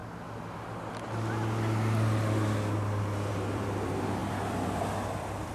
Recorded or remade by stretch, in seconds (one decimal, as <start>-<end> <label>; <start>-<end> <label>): 0.0-3.3 recorded; 3.3-5.5 remade